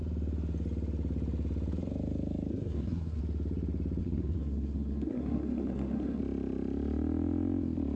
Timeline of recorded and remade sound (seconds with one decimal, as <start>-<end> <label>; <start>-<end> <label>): 0.0-2.5 recorded; 2.5-3.2 remade; 3.2-4.0 recorded; 4.0-6.2 remade; 6.2-8.0 recorded